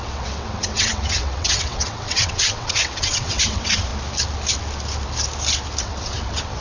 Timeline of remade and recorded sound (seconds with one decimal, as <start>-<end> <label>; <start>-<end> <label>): 0.0-3.9 remade; 3.9-5.8 recorded; 5.8-6.6 remade